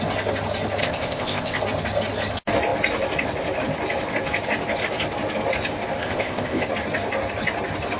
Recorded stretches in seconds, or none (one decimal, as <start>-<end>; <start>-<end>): 0.0-0.8; 1.6-6.0; 6.7-8.0